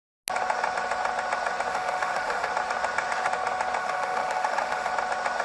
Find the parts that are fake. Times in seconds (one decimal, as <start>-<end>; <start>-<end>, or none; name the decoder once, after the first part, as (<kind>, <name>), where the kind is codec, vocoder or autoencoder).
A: 1.7-2.5 (autoencoder, DAC-VAE); 3.8-4.9